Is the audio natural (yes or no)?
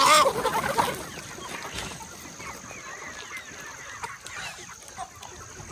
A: yes